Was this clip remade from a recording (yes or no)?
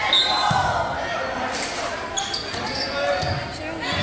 no